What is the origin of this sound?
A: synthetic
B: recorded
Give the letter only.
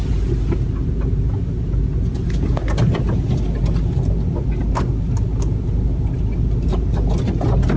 B